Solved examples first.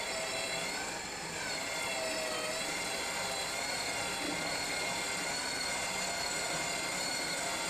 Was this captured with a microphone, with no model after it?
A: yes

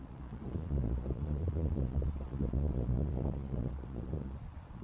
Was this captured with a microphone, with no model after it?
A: no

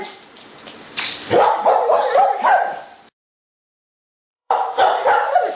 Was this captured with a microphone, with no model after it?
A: no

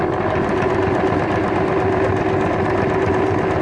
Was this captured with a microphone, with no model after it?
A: yes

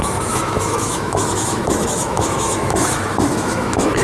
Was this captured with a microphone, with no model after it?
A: no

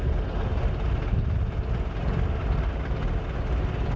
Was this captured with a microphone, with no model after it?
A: yes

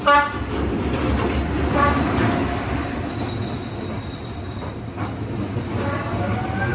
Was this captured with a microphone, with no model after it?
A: yes